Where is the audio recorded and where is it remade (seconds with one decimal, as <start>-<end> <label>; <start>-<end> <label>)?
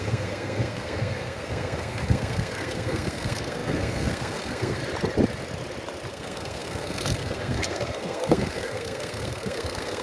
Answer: 0.0-4.8 remade; 4.8-6.1 recorded; 6.1-10.0 remade